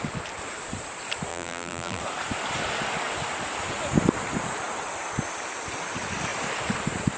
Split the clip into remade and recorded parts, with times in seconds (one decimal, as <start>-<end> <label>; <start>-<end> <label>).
0.0-1.3 recorded; 1.3-2.0 remade; 2.0-7.2 recorded